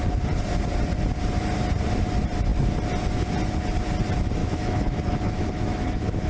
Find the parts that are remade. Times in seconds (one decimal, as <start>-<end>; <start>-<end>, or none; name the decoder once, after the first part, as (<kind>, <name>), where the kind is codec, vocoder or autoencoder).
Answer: 4.4-6.3 (autoencoder, DAC-VAE)

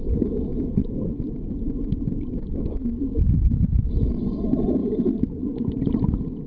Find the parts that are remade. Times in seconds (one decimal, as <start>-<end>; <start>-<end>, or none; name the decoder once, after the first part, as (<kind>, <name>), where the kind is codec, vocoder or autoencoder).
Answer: 4.8-5.7 (autoencoder, DAC-VAE)

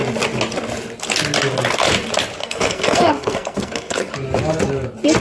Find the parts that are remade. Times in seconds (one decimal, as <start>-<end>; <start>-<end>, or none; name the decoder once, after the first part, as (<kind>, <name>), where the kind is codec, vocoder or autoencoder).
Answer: 2.4-4.1 (codec, SNAC)

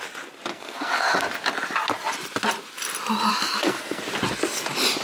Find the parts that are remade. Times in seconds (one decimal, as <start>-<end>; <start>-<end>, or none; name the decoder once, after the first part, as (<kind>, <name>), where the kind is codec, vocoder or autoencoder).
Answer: 0.5-1.2 (codec, SNAC); 3.3-4.0